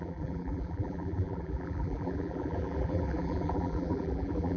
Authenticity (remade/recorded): remade